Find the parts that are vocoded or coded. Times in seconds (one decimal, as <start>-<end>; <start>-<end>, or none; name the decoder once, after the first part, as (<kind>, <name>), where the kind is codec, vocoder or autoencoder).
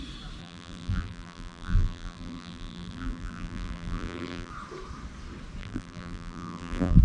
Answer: 0.4-4.5 (vocoder, BigVGAN v2); 5.6-7.0